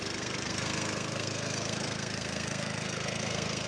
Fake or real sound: fake